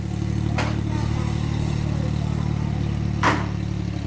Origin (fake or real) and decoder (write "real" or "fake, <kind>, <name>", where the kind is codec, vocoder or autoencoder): real